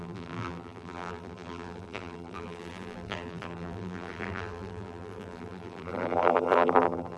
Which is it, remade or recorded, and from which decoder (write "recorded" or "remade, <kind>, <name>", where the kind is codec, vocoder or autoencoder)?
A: remade, vocoder, BigVGAN v2